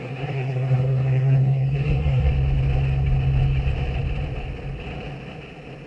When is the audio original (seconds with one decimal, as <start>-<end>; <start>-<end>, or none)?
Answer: 2.3-5.9